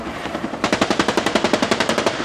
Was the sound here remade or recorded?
remade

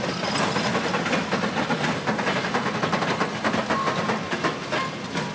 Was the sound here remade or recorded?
recorded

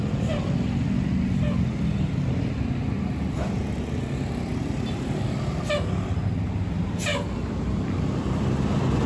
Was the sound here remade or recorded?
recorded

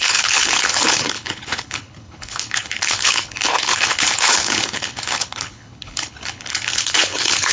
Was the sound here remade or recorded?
remade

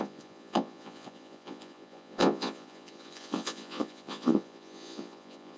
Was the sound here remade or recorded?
remade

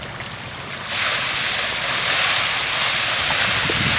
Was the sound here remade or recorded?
recorded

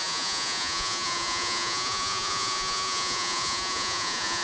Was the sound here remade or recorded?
remade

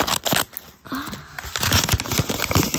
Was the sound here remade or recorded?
recorded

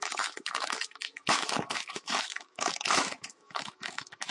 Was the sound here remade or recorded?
remade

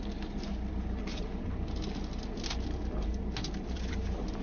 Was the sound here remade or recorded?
recorded